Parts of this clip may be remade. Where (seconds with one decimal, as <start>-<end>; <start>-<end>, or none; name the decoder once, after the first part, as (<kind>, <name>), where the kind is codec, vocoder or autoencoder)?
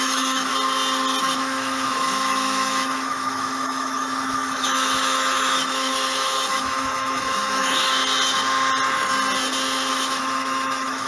0.0-0.5 (autoencoder, DAC-VAE); 1.2-8.0; 9.9-11.1